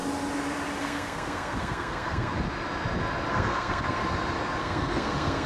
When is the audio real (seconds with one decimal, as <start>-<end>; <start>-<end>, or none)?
0.0-0.8; 2.3-3.3; 4.0-4.6